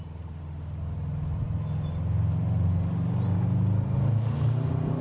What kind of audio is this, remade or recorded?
recorded